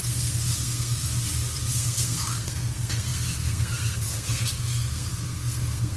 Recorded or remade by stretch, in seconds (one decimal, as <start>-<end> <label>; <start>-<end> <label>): 0.0-1.1 remade; 1.1-1.7 recorded; 1.7-6.0 remade